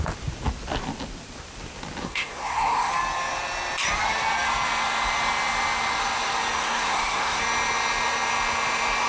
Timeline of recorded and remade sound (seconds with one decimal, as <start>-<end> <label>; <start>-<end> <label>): 0.0-2.0 recorded; 2.0-2.9 remade; 2.9-6.6 recorded; 6.6-7.4 remade; 7.4-9.1 recorded